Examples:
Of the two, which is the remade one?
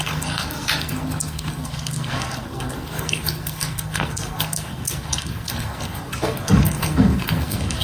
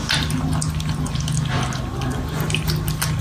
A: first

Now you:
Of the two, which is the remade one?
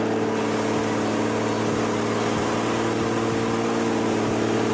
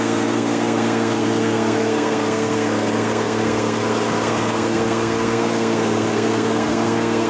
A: second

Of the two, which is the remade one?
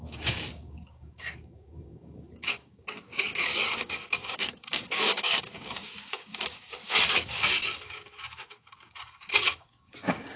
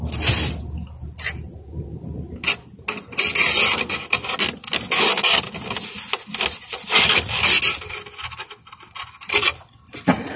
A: first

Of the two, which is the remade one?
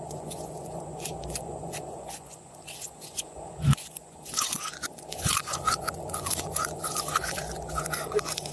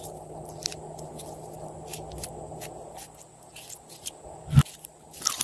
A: first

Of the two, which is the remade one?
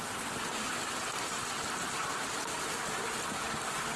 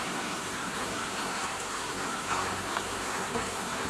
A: second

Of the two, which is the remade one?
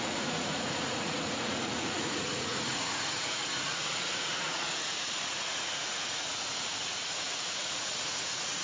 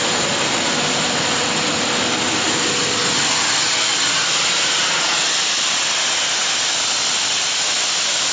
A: first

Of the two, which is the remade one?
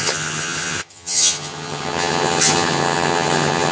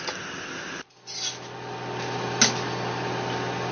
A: first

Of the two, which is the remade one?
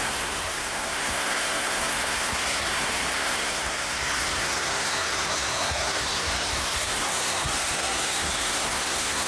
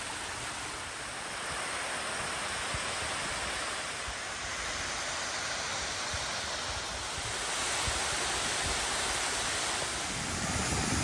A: first